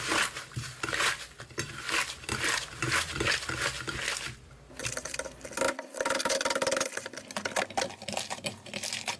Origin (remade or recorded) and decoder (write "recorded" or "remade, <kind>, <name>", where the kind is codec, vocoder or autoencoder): recorded